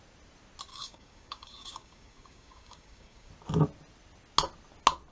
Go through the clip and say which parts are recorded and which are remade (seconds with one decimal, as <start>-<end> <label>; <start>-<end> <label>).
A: 0.0-0.7 recorded; 0.7-3.3 remade; 3.3-5.1 recorded